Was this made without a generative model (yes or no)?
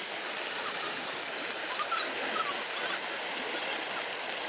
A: yes